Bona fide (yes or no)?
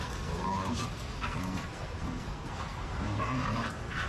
no